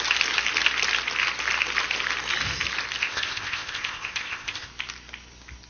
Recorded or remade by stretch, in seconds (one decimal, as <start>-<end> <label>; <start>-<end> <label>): 0.0-3.0 recorded; 3.0-4.7 remade; 4.7-5.7 recorded